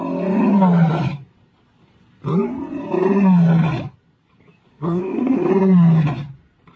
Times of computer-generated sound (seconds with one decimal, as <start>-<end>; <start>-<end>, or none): 4.7-5.5